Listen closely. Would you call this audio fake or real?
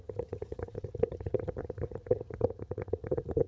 fake